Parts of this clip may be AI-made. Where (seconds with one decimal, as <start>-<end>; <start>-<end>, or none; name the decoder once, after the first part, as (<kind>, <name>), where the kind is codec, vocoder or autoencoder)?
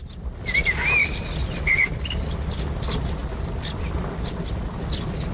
none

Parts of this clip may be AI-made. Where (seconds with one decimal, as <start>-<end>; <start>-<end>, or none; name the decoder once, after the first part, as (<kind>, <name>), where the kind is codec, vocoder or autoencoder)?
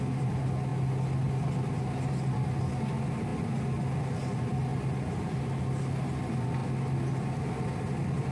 none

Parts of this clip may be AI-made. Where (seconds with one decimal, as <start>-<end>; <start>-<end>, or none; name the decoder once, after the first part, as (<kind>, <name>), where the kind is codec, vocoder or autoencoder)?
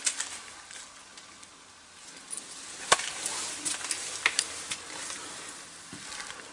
none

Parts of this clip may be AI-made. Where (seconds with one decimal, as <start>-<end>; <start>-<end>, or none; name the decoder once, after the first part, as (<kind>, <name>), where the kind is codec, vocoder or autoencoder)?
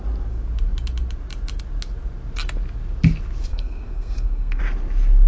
3.5-4.6 (codec, SNAC)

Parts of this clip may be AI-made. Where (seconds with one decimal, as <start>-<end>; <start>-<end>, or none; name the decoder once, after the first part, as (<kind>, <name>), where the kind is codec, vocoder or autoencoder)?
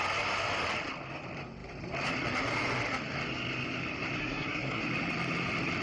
4.2-4.8 (codec, SNAC)